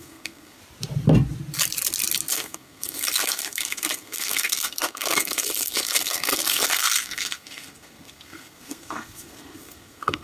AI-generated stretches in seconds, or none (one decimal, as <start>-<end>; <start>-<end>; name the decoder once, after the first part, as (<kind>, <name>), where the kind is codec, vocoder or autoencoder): 0.0-0.6 (codec, SNAC); 2.3-10.2